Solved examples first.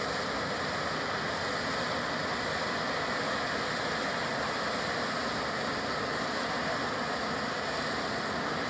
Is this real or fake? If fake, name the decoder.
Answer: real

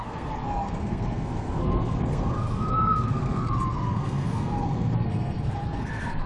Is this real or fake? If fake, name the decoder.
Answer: fake, codec, SNAC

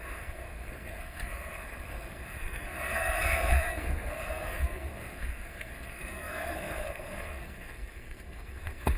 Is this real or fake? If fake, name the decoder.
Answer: fake, codec, SNAC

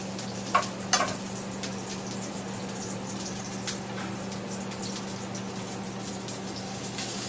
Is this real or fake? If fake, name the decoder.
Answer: real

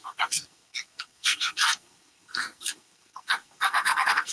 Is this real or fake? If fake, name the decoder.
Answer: fake, codec, SNAC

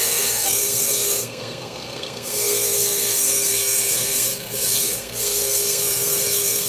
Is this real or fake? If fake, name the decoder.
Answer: fake, codec, SNAC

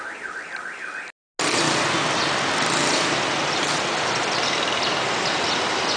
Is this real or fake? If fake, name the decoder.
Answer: real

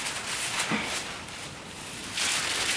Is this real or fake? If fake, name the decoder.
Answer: real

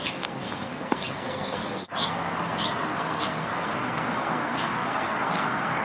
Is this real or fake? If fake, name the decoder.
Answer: fake, codec, SNAC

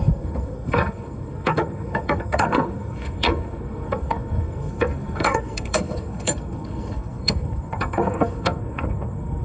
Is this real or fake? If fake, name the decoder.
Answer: fake, codec, SNAC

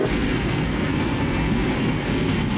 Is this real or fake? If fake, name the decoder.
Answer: fake, codec, SNAC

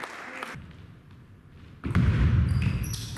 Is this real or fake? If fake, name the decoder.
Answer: real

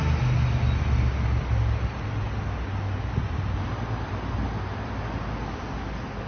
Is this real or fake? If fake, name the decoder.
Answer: real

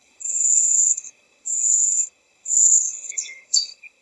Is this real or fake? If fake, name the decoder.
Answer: fake, codec, SNAC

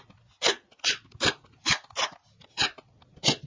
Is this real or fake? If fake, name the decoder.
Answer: real